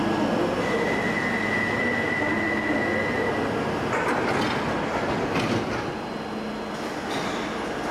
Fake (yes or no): no